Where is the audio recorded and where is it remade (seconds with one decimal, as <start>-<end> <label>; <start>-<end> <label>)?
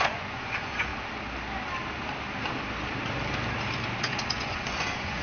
0.0-0.9 remade; 0.9-4.0 recorded; 4.0-5.2 remade